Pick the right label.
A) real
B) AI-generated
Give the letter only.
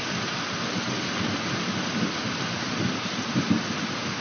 A